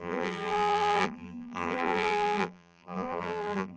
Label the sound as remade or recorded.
remade